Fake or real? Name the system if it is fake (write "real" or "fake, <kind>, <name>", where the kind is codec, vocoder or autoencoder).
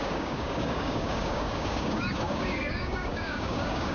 fake, codec, DAC